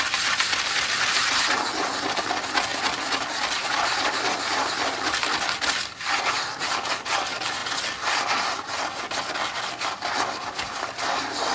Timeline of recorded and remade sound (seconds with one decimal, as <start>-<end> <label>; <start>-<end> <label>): 0.0-2.7 recorded; 2.7-4.3 remade; 4.3-11.5 recorded